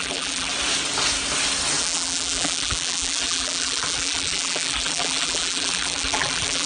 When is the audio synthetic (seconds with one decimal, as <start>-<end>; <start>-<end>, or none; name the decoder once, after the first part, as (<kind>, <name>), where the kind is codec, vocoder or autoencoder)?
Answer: 0.0-0.5 (vocoder, BigVGAN v2); 1.8-6.7